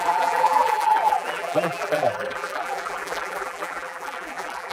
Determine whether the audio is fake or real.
fake